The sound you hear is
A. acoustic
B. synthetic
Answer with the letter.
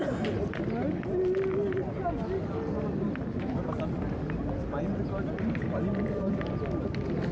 A